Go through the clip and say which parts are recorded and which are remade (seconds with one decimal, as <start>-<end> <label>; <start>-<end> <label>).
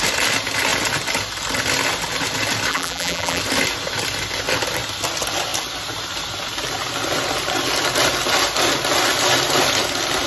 0.0-2.7 recorded; 2.7-3.4 remade; 3.4-10.3 recorded